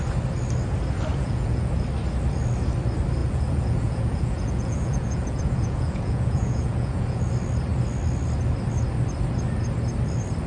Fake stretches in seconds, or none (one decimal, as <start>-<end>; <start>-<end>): 1.1-1.7; 3.2-7.2